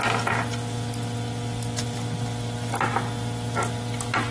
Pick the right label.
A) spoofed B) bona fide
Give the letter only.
B